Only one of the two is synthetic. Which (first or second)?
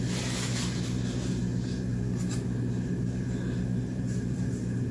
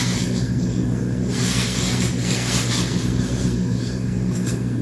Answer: second